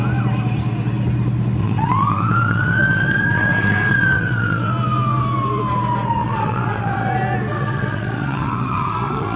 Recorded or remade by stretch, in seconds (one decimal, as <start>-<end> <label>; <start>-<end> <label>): 0.0-1.6 recorded; 1.6-4.7 remade; 4.7-6.2 recorded; 6.2-7.1 remade; 7.1-7.5 recorded; 7.5-9.4 remade